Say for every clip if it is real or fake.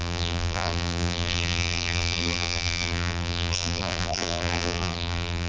fake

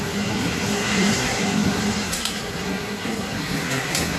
fake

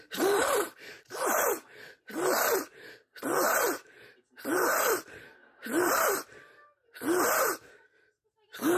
real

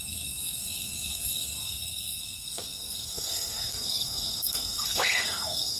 fake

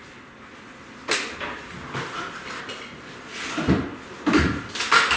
real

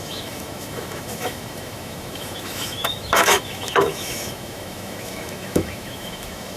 fake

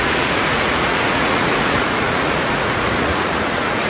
fake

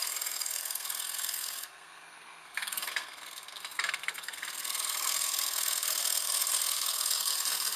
fake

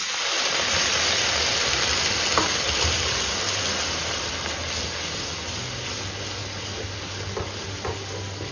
real